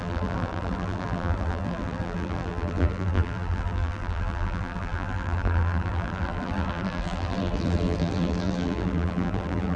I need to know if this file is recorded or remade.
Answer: remade